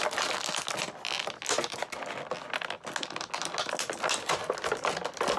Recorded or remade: recorded